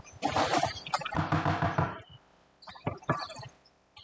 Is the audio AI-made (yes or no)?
no